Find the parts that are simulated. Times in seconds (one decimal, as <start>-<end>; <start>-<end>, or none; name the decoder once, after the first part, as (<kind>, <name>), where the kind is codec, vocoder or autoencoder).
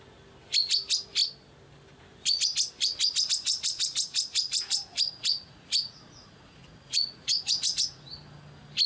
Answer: 3.5-8.1 (vocoder, Vocos)